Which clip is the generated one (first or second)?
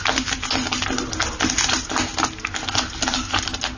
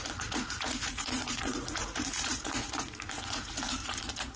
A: second